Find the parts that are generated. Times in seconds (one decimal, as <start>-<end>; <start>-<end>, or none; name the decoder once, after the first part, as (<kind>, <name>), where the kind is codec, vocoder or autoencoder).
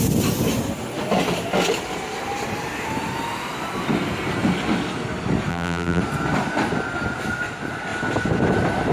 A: 5.5-6.0 (vocoder, BigVGAN v2)